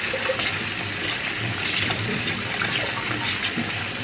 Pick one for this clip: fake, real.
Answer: real